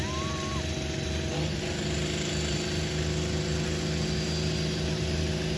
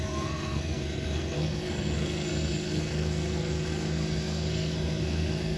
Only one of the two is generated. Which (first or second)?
second